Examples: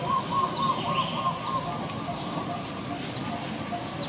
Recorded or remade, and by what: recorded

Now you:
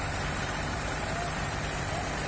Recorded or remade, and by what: remade, vocoder, BigVGAN v2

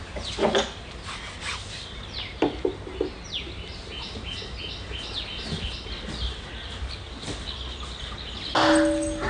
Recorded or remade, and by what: recorded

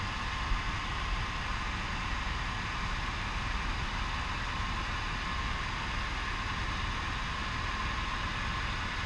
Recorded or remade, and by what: recorded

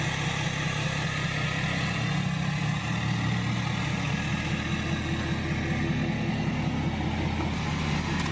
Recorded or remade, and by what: recorded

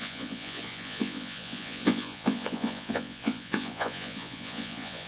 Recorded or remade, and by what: remade, vocoder, Vocos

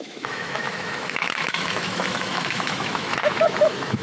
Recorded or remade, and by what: remade, autoencoder, DAC-VAE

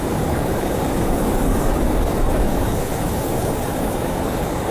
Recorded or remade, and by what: remade, codec, DAC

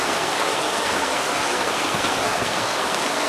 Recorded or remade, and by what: remade, codec, SNAC